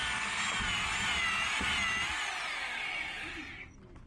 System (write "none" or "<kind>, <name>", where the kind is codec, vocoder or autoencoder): none